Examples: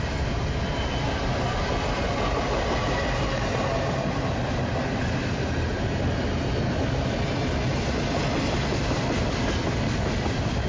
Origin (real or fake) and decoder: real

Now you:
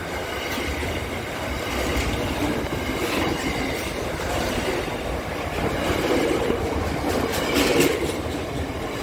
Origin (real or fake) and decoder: real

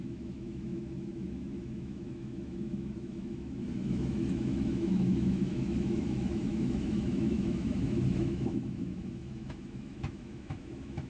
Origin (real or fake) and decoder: fake, autoencoder, DAC-VAE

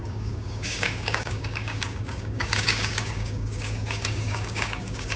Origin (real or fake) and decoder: fake, codec, DAC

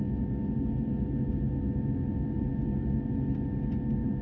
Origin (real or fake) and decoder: real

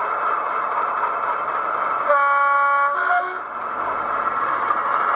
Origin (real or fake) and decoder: real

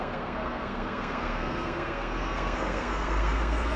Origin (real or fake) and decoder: fake, codec, SNAC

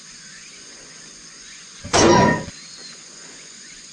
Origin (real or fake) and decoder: fake, vocoder, Vocos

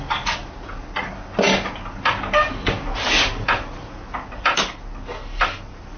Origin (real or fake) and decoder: real